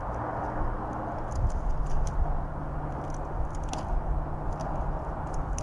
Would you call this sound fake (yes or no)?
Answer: no